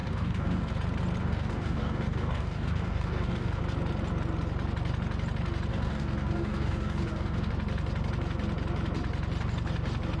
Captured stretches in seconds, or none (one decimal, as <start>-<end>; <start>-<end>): 0.7-1.2; 3.6-5.7; 7.5-10.2